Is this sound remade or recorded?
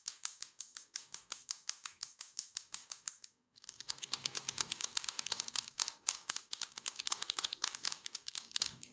remade